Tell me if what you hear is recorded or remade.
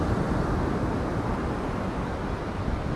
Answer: recorded